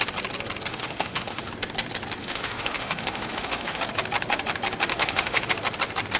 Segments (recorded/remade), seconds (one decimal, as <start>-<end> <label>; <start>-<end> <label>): 0.0-0.7 recorded; 0.7-1.5 remade; 1.5-2.2 recorded; 2.2-3.8 remade; 3.8-4.9 recorded; 4.9-5.5 remade; 5.5-6.2 recorded